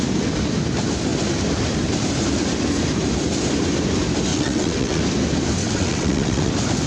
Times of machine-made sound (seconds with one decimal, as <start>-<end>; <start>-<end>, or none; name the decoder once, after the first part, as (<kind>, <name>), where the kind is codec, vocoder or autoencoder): 4.3-5.0 (vocoder, WaveNeXt); 5.6-6.5